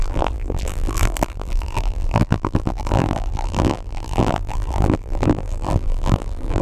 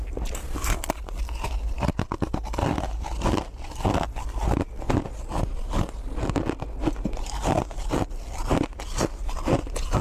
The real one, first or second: second